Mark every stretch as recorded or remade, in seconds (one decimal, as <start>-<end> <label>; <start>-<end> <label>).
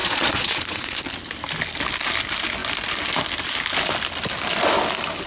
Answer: 0.0-1.0 remade; 1.0-5.3 recorded